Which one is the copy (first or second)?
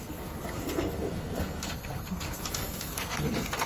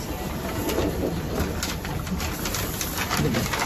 first